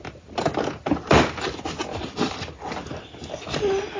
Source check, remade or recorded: recorded